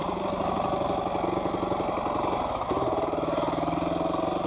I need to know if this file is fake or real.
real